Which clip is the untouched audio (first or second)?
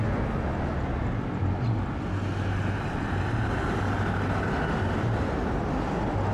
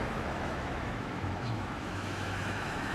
first